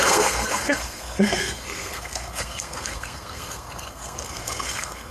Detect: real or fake fake